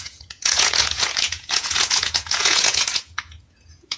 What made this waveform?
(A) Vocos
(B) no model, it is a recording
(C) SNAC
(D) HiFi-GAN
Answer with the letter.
A